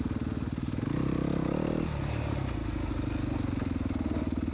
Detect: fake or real real